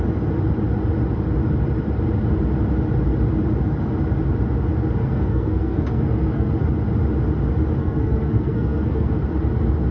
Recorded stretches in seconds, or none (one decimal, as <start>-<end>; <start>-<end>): 0.0-5.0; 6.5-7.8; 9.1-9.9